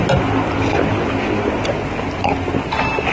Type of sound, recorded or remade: recorded